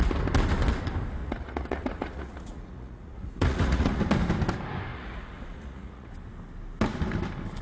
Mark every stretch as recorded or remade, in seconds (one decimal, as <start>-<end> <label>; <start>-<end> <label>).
0.0-1.2 recorded; 1.2-4.0 remade; 4.0-4.9 recorded; 4.9-6.1 remade; 6.1-7.6 recorded